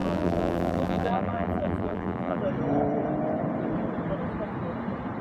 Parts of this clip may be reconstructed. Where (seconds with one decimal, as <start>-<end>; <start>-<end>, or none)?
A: 0.0-2.4

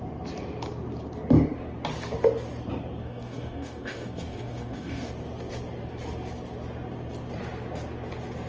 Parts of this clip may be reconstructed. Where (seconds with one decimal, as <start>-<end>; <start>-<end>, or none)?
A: 3.0-5.1